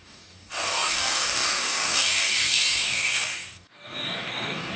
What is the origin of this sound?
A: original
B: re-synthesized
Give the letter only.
B